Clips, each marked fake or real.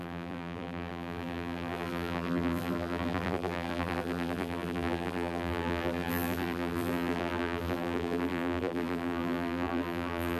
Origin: fake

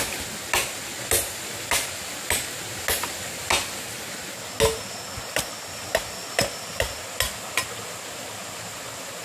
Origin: real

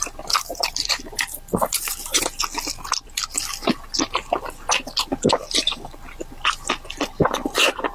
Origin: fake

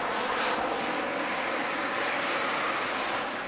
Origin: real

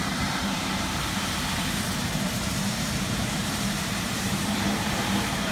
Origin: fake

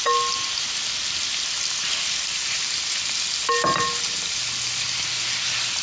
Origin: real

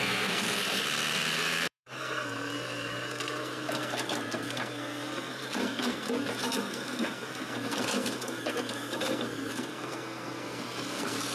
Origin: fake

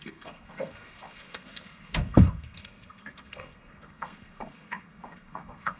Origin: fake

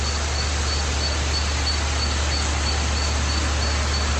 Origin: real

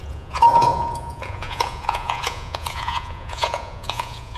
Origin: fake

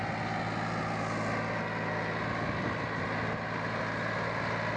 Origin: real